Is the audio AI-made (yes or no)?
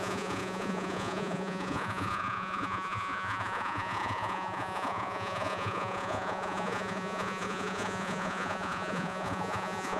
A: yes